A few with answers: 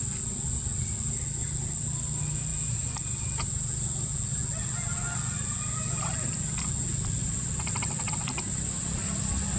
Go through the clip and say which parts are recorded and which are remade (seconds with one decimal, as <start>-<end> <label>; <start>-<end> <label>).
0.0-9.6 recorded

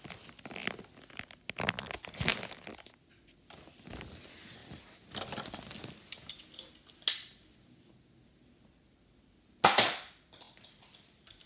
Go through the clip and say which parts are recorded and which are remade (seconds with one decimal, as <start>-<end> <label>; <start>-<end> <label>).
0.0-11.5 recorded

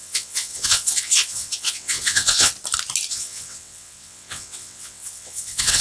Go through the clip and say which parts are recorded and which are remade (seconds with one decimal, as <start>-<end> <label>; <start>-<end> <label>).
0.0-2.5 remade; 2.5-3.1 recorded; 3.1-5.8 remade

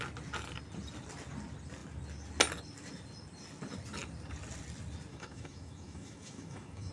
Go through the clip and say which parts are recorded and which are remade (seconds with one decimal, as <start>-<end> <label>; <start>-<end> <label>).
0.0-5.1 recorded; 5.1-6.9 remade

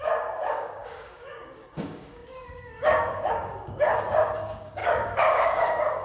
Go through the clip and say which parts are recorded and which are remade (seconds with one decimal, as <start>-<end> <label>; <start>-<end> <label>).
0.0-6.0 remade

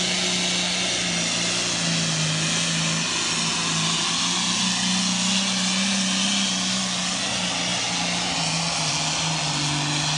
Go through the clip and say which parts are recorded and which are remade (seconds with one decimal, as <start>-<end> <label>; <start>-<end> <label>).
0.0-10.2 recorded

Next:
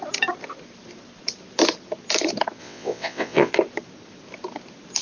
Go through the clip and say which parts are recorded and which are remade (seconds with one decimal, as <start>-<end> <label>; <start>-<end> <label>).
0.0-2.6 recorded; 2.6-3.5 remade; 3.5-5.0 recorded

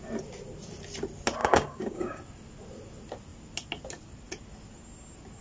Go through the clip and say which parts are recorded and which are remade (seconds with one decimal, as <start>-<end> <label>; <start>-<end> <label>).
0.0-1.4 recorded; 1.4-2.2 remade; 2.2-5.4 recorded